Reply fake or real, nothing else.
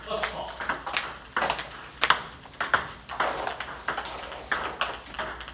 real